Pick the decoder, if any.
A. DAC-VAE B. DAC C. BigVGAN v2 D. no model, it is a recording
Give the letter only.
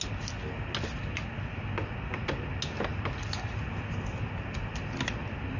D